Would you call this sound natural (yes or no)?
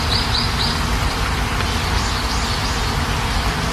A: yes